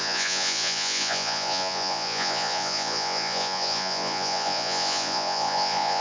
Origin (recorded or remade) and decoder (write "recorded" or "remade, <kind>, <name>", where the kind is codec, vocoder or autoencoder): remade, vocoder, Vocos